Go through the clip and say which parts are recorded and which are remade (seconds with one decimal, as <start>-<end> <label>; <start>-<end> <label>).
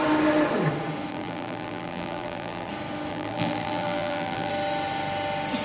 0.0-1.1 recorded; 1.1-2.7 remade; 2.7-3.1 recorded; 3.1-4.5 remade; 4.5-5.6 recorded